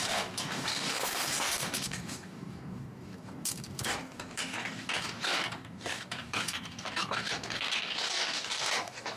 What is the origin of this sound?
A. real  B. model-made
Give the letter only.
B